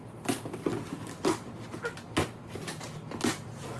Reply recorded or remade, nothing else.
recorded